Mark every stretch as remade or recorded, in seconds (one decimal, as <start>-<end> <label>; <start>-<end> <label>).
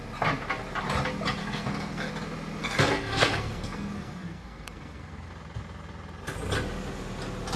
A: 0.0-1.4 recorded; 1.4-2.1 remade; 2.1-2.6 recorded; 2.6-5.3 remade; 5.3-7.6 recorded